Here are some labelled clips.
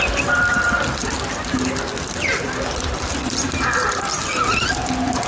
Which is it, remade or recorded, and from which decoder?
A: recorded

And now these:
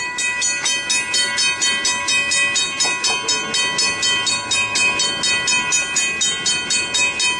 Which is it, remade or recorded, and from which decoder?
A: recorded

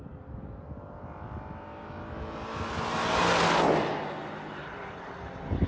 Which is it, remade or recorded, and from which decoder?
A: recorded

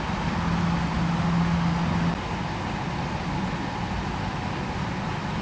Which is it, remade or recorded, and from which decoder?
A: recorded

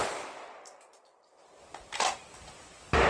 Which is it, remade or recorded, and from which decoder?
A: recorded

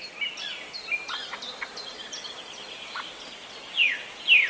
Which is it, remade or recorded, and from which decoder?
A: recorded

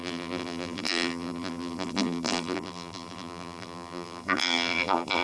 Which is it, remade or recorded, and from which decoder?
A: remade, vocoder, BigVGAN v2